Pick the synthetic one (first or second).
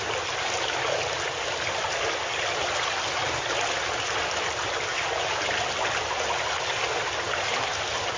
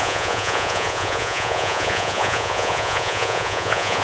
second